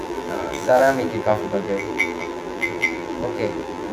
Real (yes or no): no